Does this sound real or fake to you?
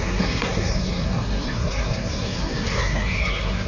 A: fake